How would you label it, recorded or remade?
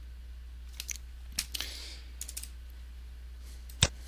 recorded